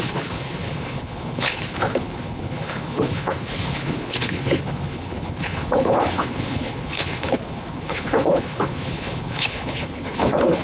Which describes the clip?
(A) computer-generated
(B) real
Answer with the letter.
A